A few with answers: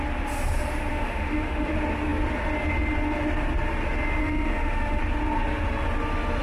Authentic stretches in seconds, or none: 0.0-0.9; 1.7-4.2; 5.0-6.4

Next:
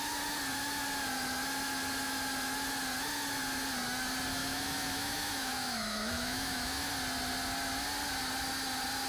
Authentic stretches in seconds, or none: 0.0-4.4; 6.9-9.1

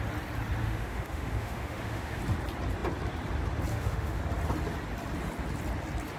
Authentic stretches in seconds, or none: 0.0-0.6; 2.2-3.7; 4.2-6.2

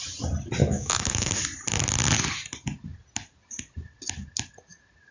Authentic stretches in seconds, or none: 0.0-0.6; 1.3-5.1

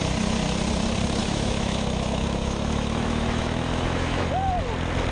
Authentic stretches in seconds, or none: 0.0-1.2; 4.3-5.1